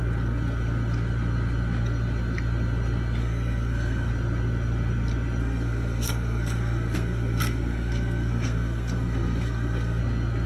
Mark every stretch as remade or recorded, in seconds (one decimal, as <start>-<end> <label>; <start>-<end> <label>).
0.0-3.2 recorded; 3.2-4.1 remade; 4.1-5.4 recorded; 5.4-10.0 remade; 10.0-10.5 recorded